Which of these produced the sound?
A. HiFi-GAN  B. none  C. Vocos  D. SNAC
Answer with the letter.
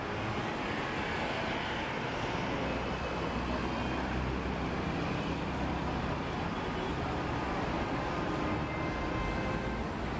B